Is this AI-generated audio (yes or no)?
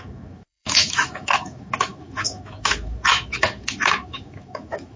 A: yes